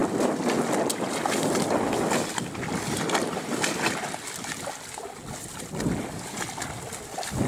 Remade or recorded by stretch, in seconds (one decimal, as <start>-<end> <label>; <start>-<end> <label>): 0.0-7.5 recorded